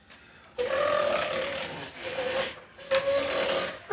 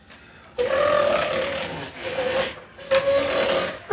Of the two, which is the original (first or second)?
second